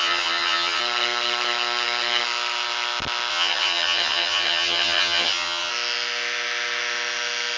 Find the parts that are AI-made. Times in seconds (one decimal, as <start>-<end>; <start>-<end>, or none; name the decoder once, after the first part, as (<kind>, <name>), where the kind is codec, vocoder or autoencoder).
0.0-0.8 (vocoder, HiFi-GAN); 3.3-5.7